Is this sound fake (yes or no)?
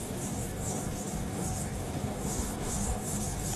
yes